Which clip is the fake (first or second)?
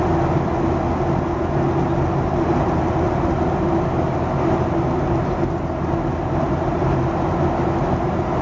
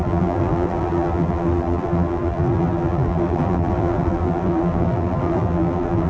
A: second